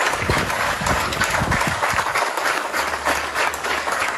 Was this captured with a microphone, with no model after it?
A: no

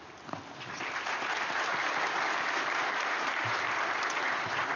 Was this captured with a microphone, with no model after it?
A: yes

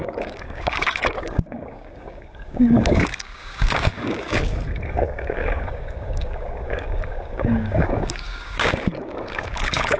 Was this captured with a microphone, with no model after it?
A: no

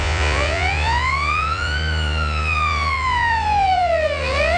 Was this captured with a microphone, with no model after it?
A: no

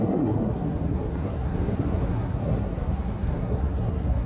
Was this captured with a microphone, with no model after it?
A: no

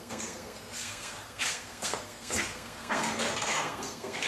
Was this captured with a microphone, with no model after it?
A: no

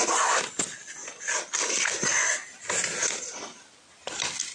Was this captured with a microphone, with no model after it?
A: yes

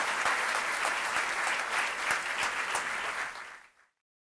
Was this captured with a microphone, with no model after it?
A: yes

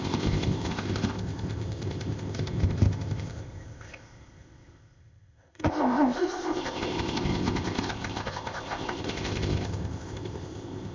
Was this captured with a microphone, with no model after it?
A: no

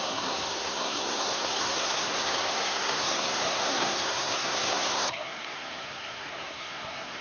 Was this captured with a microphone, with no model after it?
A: no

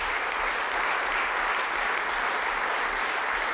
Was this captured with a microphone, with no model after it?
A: yes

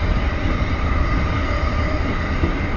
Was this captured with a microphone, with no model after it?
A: yes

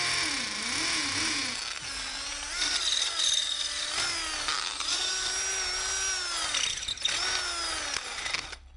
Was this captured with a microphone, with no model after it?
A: yes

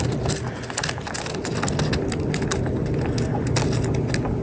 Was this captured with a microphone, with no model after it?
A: yes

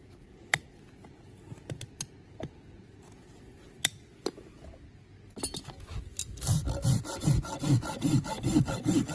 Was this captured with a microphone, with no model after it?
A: yes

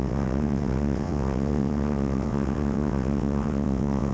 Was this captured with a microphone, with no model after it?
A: no